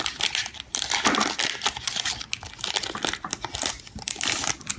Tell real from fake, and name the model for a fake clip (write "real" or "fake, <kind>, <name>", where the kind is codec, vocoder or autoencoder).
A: real